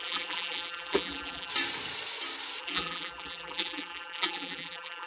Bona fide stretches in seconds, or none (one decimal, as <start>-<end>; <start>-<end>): 1.5-2.6